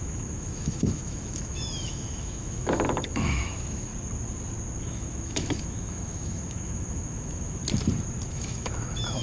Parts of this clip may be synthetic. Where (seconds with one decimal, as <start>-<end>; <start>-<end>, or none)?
0.0-3.9; 4.8-7.6; 8.3-9.2